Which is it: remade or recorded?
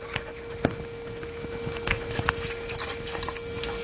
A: recorded